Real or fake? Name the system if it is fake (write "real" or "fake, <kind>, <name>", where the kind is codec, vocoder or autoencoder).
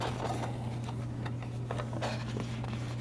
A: real